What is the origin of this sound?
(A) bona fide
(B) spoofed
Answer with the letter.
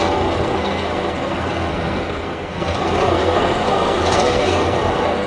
B